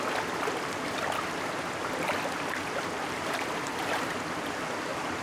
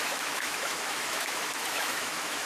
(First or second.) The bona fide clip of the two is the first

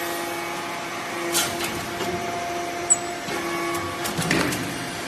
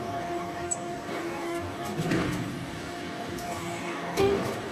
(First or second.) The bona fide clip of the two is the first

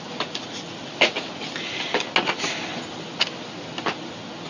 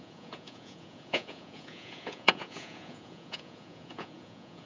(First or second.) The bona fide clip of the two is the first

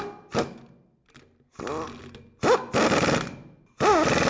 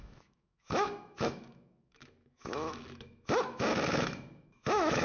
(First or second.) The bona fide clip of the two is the first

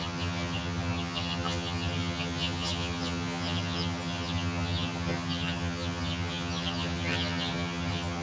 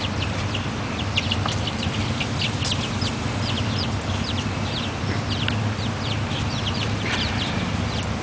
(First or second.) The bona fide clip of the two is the second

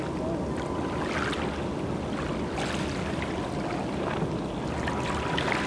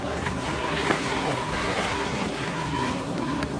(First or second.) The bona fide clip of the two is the first